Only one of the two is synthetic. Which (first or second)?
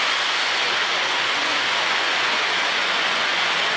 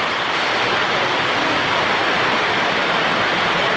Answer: first